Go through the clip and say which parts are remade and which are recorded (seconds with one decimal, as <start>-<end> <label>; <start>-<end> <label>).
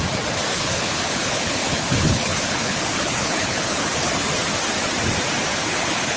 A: 0.0-0.5 recorded; 0.5-4.1 remade; 4.1-5.5 recorded; 5.5-6.2 remade